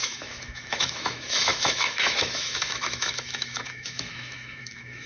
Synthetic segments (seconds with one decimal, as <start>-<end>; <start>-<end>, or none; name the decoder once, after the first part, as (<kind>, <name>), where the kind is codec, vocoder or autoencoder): 0.0-5.1 (autoencoder, DAC-VAE)